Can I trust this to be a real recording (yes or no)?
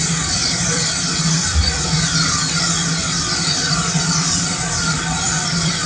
no